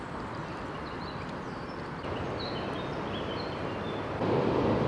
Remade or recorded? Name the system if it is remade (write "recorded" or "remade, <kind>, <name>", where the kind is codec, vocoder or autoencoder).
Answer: recorded